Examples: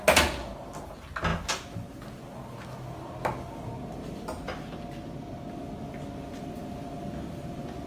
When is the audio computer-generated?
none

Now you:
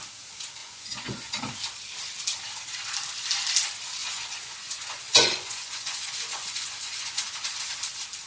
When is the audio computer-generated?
0.6-1.4; 4.0-7.3

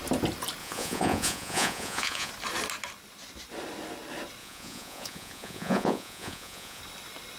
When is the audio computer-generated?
0.6-2.3; 4.4-6.8

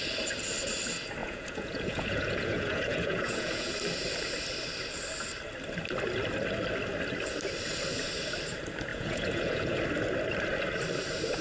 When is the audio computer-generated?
1.2-3.7; 8.9-9.8

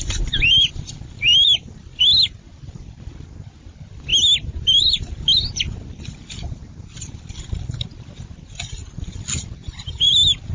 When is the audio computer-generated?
none